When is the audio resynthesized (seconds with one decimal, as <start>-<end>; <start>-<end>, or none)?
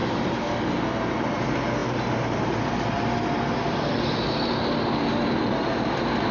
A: none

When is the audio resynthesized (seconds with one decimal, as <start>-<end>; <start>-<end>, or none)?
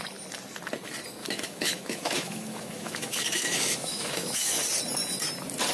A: 1.2-4.6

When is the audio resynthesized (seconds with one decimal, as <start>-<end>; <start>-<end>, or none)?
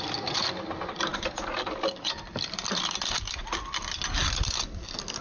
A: none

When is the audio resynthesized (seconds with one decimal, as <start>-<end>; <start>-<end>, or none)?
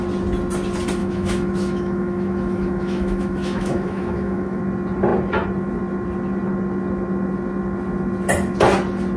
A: 1.0-4.6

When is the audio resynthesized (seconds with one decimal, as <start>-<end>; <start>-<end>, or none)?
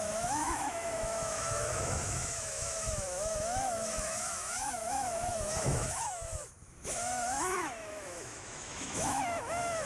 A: 0.0-9.9